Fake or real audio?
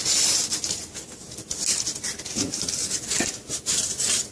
real